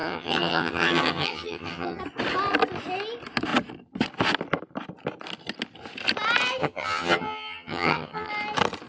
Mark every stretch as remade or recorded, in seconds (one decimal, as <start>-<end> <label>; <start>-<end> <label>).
0.0-2.0 remade; 2.0-6.6 recorded; 6.6-8.3 remade; 8.3-8.9 recorded